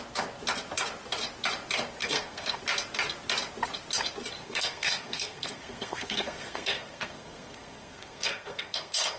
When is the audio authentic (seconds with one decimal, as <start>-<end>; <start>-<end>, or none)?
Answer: 0.0-2.0; 2.6-4.4